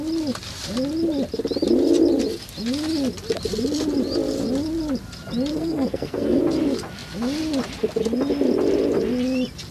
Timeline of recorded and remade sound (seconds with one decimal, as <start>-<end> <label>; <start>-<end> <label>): 0.0-5.5 recorded; 5.5-6.4 remade; 6.4-9.7 recorded